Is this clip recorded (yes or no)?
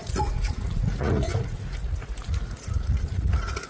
no